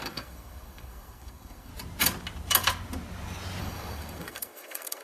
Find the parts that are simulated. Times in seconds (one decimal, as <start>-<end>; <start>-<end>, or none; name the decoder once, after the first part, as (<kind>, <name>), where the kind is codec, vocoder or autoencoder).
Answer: 0.0-1.7 (codec, SNAC); 3.6-5.0

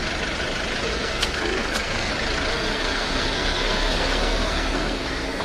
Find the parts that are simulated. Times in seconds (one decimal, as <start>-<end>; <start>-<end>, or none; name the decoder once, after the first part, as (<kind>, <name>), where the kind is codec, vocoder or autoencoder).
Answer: 0.9-2.1 (codec, SNAC); 2.5-5.4

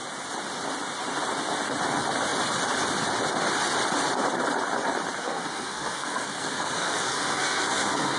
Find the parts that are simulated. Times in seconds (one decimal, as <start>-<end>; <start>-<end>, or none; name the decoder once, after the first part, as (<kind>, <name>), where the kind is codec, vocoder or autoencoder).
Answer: 5.2-8.2 (codec, SNAC)